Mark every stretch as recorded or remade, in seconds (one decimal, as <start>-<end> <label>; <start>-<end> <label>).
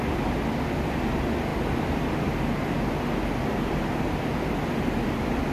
0.0-5.5 remade